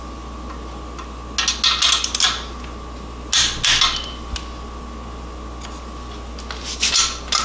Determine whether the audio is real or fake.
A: real